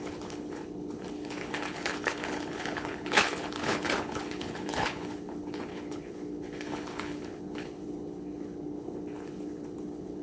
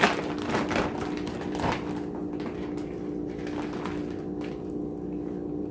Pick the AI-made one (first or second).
first